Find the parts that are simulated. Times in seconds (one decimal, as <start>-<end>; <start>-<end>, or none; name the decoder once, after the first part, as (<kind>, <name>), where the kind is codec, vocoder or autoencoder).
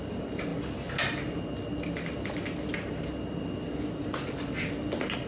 none